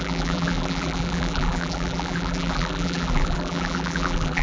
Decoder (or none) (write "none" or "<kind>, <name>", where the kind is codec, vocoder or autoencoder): vocoder, BigVGAN v2